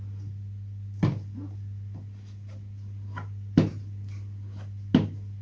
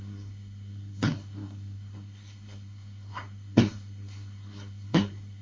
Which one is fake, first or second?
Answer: second